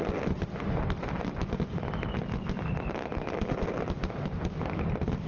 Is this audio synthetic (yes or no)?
no